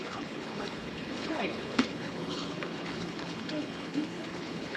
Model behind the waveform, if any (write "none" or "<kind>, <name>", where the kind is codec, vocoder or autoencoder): codec, HILCodec